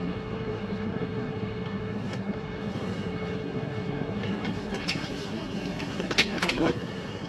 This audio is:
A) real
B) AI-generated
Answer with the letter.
B